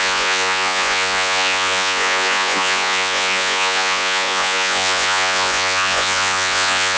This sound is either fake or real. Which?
fake